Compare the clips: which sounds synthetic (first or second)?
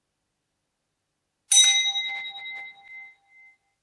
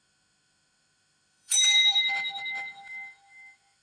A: second